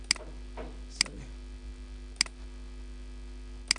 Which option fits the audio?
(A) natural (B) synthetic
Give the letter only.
A